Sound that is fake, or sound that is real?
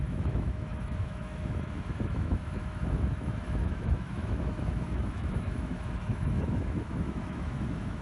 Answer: fake